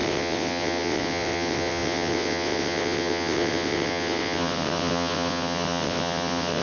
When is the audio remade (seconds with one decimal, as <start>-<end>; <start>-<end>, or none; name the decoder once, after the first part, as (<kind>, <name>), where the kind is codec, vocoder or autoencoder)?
0.0-6.6 (vocoder, WaveNeXt)